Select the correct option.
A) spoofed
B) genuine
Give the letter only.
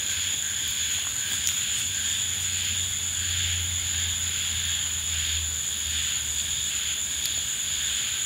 B